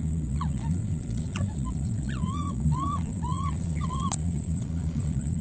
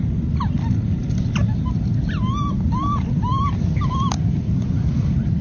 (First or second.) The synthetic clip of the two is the first